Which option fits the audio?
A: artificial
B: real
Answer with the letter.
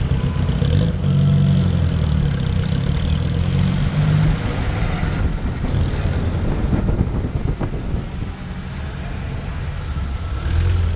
B